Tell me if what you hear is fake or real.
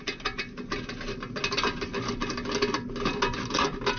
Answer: real